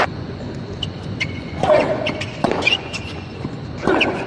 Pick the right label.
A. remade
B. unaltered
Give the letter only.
A